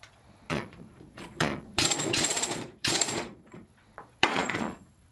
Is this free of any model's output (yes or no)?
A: no